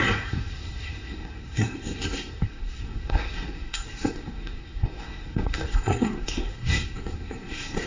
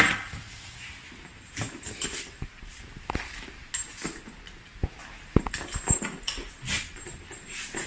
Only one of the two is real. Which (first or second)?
second